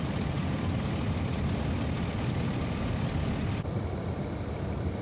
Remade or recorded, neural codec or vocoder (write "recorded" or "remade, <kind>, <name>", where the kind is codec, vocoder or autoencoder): recorded